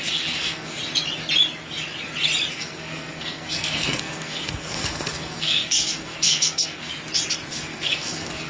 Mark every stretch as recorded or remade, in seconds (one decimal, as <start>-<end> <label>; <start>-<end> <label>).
0.0-0.8 remade; 0.8-2.5 recorded; 2.5-6.9 remade; 6.9-7.5 recorded; 7.5-8.5 remade